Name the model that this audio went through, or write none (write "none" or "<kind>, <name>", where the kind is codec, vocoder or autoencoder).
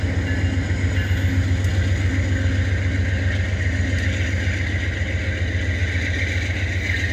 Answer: none